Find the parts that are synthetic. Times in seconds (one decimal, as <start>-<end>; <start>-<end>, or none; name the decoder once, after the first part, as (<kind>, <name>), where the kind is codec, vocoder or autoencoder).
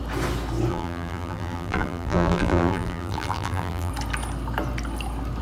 0.7-3.9 (vocoder, BigVGAN v2)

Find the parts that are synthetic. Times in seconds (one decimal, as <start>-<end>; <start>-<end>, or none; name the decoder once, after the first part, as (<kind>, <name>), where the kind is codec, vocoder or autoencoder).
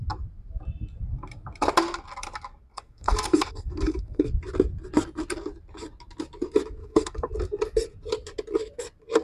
2.7-4.3 (codec, SNAC); 6.8-7.3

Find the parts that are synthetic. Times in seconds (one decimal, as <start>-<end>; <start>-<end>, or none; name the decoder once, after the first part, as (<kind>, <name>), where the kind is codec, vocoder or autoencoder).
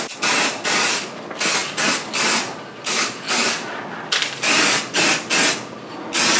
none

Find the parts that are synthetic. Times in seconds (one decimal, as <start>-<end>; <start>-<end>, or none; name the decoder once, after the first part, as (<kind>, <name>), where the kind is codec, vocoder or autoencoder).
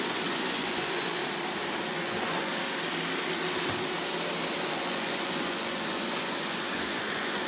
0.0-1.2 (vocoder, Vocos); 1.8-2.5; 4.6-7.5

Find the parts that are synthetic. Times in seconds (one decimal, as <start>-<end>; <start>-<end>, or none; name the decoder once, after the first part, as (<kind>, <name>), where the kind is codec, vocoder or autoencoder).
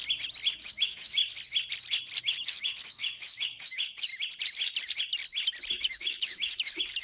0.5-1.2 (autoencoder, DAC-VAE); 2.2-4.1; 5.7-7.0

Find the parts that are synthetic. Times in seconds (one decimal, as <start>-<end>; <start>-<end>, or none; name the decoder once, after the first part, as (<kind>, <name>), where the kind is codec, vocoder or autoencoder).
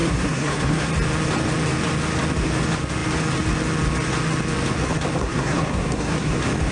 0.0-0.9 (codec, SNAC); 5.2-6.3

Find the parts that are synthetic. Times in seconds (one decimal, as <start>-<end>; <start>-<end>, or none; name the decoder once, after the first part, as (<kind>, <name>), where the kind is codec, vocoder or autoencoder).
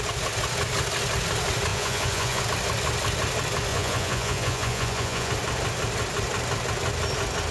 1.7-2.4 (vocoder, Vocos); 3.7-5.3